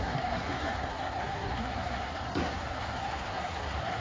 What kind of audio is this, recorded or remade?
remade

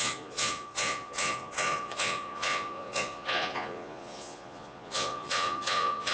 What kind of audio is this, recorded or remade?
remade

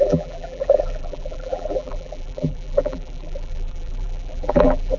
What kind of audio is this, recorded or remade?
remade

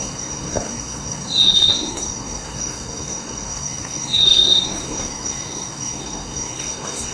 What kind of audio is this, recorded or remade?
remade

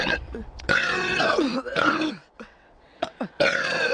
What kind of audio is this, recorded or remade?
remade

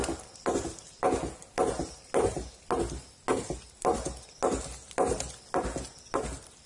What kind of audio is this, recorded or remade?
recorded